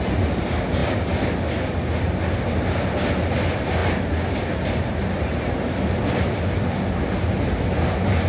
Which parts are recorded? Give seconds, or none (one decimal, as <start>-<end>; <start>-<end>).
0.0-8.3